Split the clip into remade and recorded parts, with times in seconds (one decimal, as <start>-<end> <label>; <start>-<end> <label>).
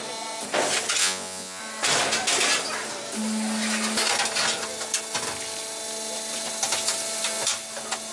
0.0-1.0 recorded; 1.0-1.6 remade; 1.6-8.1 recorded